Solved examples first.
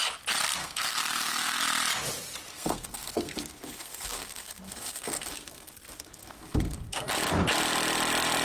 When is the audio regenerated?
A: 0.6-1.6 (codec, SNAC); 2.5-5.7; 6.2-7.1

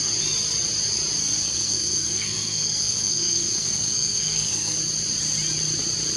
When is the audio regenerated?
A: 1.2-4.8 (codec, SNAC)

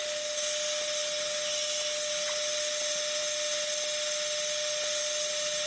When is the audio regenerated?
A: none

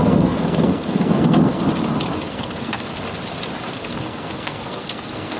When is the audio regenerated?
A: 0.0-1.6 (codec, SNAC); 2.3-2.9; 3.7-5.4

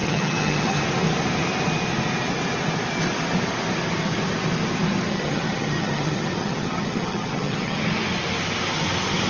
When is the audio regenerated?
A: 0.0-0.8 (vocoder, HiFi-GAN); 5.1-7.8

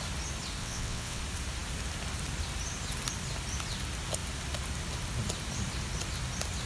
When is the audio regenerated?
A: 0.6-1.2 (vocoder, WaveNeXt)